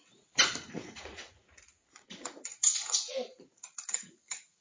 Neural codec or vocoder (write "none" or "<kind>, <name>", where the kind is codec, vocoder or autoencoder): vocoder, Vocos